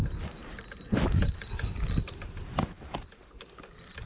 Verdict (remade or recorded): recorded